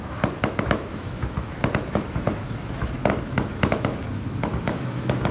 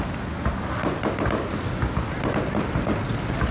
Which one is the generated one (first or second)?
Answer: first